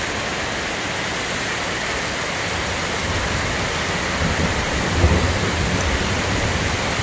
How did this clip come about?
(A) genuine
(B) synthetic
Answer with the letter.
A